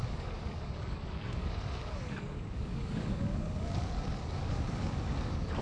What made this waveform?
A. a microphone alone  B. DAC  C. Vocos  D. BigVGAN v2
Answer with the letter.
B